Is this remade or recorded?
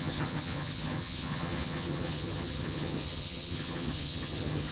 remade